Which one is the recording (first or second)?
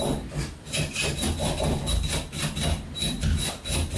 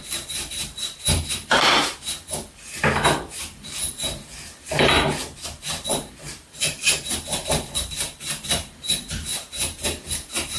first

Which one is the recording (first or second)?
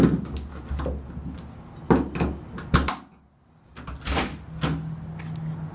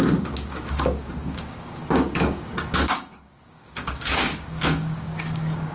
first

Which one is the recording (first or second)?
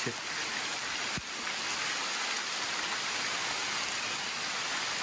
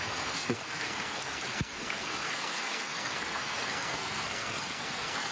first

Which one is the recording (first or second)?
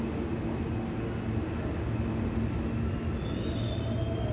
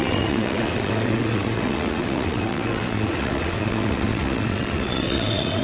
first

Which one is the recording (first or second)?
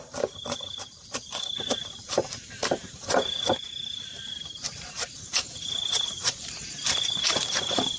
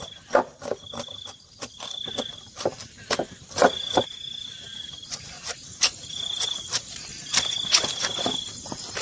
second